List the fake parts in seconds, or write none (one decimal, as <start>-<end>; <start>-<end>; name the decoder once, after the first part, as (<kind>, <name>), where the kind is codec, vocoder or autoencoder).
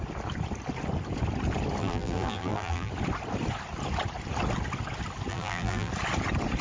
1.8-2.9 (vocoder, BigVGAN v2); 5.3-5.9